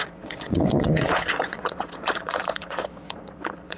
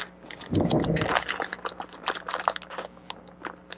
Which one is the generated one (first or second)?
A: first